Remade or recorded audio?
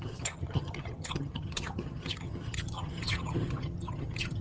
remade